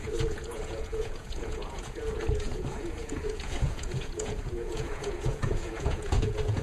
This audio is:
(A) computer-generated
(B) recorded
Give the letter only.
A